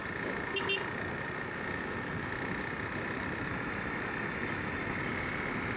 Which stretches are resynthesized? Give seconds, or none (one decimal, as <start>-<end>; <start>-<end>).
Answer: 3.5-5.0